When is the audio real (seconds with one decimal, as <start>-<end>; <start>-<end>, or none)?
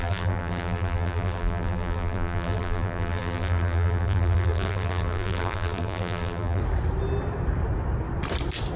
6.6-8.8